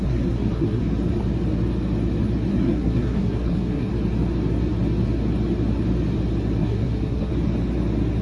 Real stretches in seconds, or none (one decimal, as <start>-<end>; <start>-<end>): 0.8-2.5; 3.9-6.6; 7.3-8.2